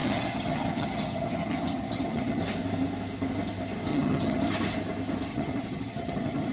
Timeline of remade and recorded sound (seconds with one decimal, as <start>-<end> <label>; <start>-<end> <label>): 0.0-2.4 remade; 2.4-3.9 recorded; 3.9-4.4 remade; 4.4-5.3 recorded; 5.3-6.5 remade